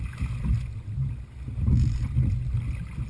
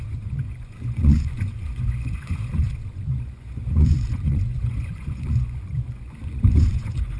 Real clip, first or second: first